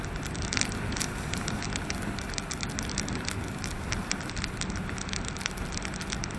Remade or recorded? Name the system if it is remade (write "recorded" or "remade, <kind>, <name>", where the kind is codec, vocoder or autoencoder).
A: recorded